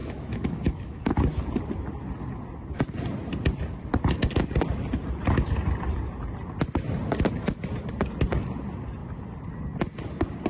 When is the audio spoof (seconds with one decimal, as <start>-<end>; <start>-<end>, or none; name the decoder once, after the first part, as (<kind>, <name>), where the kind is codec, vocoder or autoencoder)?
0.0-1.1 (autoencoder, DAC-VAE)